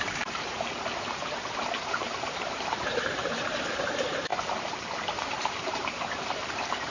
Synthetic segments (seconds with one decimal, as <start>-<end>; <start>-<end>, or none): 0.0-4.3; 5.6-6.9